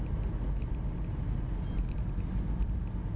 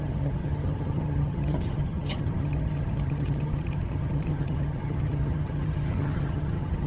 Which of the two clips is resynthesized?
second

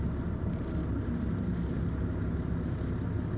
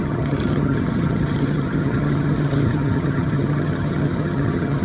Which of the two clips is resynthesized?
second